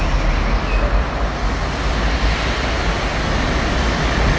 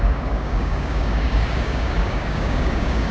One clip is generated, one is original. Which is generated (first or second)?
second